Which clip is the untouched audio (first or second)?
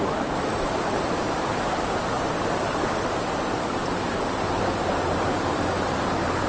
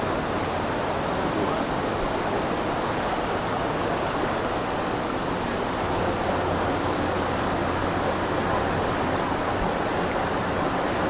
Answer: second